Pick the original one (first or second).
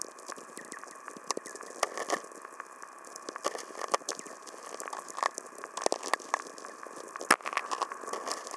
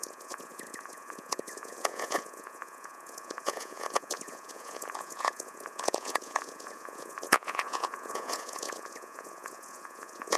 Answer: first